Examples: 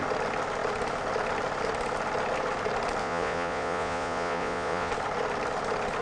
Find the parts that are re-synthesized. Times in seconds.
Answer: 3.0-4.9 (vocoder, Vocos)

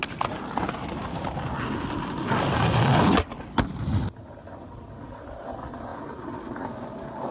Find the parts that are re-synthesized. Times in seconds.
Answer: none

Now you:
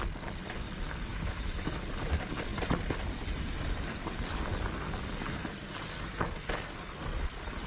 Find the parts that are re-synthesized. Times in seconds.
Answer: 1.1-1.8 (autoencoder, DAC-VAE)